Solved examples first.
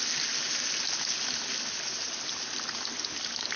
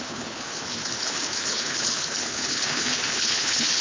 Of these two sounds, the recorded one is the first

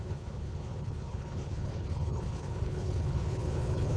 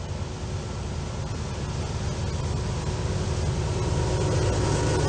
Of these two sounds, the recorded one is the second